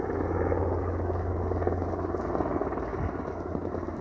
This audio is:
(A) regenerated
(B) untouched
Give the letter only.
B